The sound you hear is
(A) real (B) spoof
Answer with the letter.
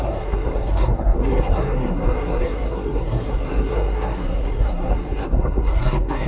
B